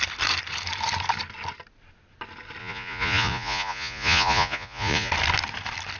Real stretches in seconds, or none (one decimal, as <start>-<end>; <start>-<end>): 0.0-2.6; 5.1-6.0